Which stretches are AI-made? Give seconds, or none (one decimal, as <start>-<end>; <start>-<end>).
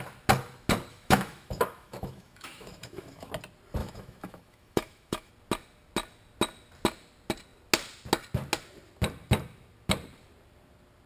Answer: 0.9-3.3; 3.8-5.3